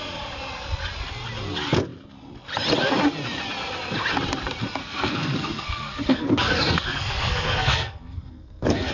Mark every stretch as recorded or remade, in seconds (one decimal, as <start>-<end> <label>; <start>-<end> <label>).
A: 0.0-4.8 recorded; 4.8-8.9 remade